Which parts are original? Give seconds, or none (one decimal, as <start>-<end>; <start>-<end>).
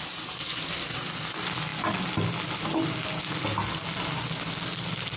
0.0-5.2